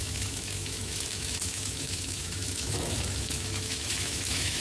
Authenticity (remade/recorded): remade